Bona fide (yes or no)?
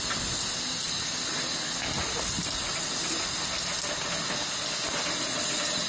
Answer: yes